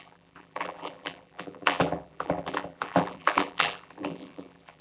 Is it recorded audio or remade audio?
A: remade